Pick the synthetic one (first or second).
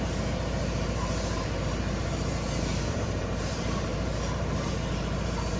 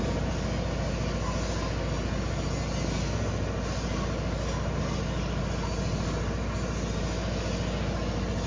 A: first